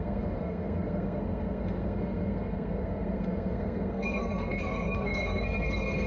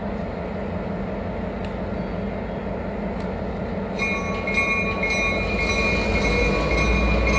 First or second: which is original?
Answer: second